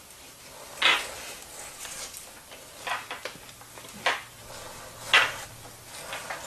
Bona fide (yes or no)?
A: yes